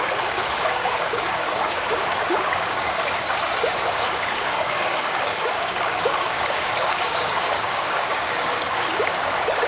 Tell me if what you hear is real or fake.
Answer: fake